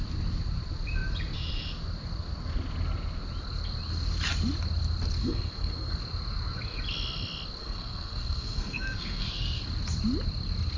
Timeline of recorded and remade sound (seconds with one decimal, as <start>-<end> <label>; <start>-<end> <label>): 0.0-5.2 recorded; 5.2-6.0 remade; 6.0-7.6 recorded; 7.6-9.6 remade; 9.6-10.8 recorded